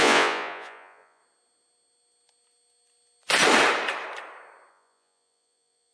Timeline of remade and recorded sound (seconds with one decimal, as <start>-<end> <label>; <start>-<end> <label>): 0.0-1.2 remade; 1.2-4.7 recorded; 4.7-5.9 remade

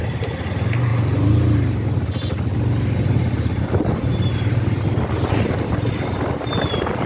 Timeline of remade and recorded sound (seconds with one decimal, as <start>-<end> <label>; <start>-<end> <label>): 0.0-7.1 recorded

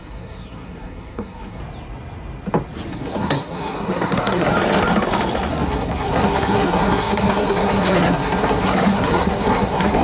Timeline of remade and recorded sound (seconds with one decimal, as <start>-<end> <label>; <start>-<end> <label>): 0.0-1.6 remade; 1.6-2.9 recorded; 2.9-4.5 remade; 4.5-5.5 recorded; 5.5-10.0 remade

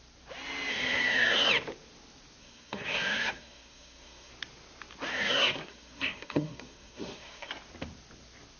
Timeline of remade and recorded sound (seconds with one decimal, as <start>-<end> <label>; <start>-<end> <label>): 0.0-0.7 recorded; 0.7-1.5 remade; 1.5-2.4 recorded; 2.4-4.3 remade; 4.3-5.1 recorded; 5.1-7.5 remade; 7.5-8.6 recorded